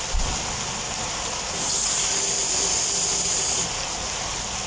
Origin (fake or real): real